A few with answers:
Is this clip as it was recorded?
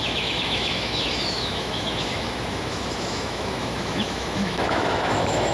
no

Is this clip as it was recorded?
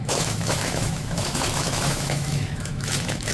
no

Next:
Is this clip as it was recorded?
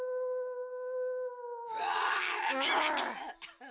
yes